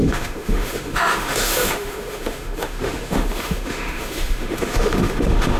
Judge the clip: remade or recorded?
remade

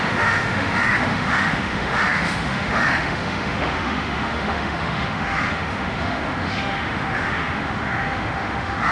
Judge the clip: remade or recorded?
remade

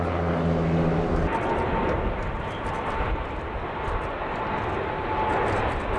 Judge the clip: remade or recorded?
recorded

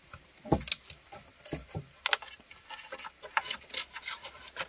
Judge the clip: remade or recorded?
recorded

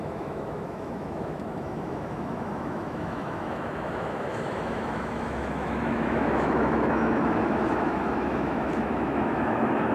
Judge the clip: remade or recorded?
remade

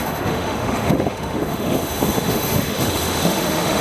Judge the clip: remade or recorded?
remade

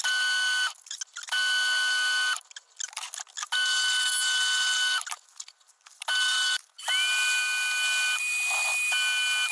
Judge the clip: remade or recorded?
recorded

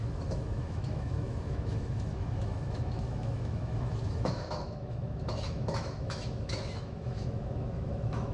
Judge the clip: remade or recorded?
remade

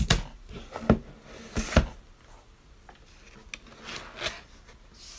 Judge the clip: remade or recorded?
recorded